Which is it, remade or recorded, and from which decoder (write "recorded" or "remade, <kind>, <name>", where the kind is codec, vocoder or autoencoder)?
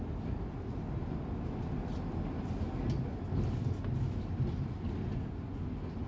recorded